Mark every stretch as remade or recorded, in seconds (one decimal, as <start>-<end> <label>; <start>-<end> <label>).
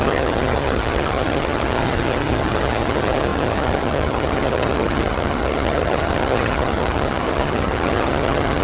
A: 0.0-8.6 remade